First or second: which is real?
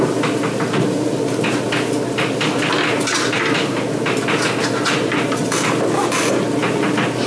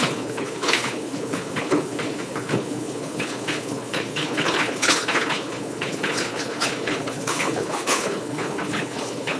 first